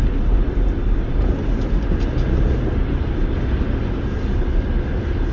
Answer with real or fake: fake